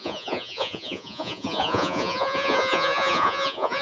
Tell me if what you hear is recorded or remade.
remade